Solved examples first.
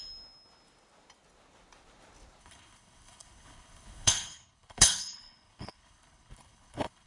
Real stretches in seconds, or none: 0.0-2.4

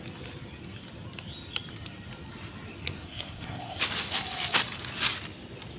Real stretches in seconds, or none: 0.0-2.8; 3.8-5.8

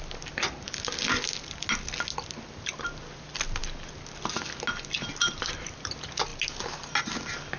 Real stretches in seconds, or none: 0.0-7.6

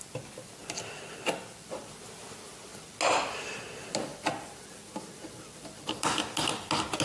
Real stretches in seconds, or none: 0.0-7.0

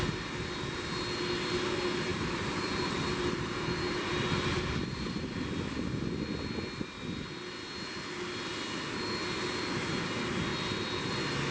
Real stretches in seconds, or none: 0.0-2.1; 5.3-11.5

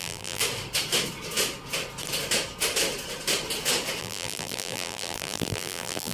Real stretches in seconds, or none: 0.4-4.0

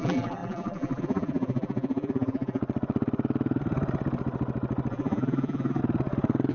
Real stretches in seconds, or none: 2.6-4.9; 5.8-6.5

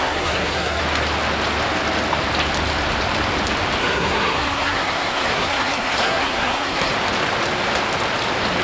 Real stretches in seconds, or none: 0.8-3.8; 6.9-8.6